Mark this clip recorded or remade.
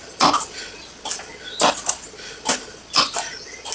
recorded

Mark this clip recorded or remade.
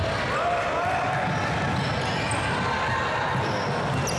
recorded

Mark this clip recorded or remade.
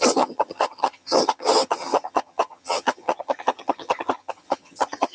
remade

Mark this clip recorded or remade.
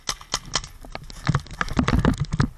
recorded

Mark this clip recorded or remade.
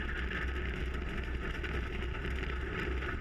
recorded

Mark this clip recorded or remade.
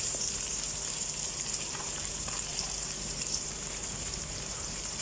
remade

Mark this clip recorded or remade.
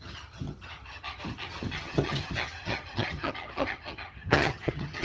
remade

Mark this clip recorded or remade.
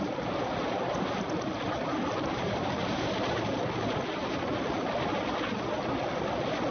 recorded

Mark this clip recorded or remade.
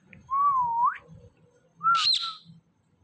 recorded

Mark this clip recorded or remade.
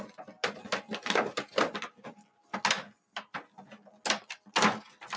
recorded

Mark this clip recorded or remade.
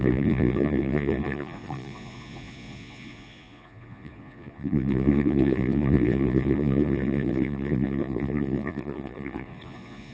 remade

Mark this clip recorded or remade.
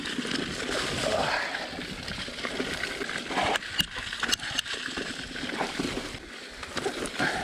recorded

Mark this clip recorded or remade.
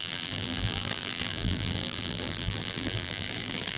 remade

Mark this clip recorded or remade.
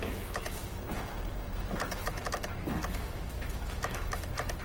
remade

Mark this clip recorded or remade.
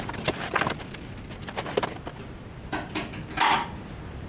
recorded